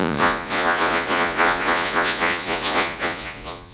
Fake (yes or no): yes